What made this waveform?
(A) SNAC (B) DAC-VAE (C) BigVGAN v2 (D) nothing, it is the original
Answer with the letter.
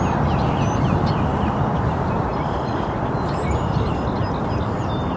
D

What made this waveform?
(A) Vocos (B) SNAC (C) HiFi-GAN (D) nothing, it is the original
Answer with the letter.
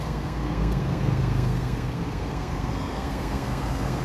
B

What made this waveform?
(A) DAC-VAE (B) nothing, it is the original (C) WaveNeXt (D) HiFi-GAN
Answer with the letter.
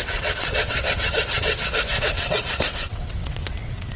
C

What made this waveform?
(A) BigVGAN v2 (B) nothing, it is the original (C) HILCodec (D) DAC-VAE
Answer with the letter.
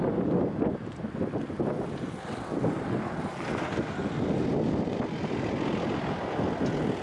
B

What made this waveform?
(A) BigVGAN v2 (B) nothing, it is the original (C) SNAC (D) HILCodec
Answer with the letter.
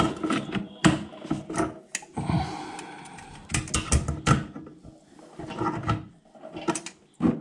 B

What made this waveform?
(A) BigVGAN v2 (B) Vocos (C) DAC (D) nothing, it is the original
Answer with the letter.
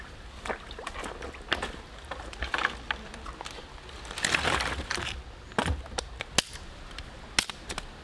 D